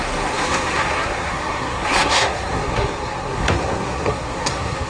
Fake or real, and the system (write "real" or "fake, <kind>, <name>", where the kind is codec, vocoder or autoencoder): fake, codec, SNAC